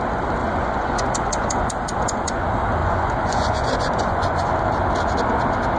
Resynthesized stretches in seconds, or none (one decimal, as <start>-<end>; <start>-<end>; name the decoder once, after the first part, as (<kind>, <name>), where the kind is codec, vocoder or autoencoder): 0.4-2.4 (vocoder, Vocos); 2.8-4.5